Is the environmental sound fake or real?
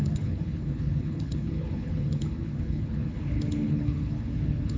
fake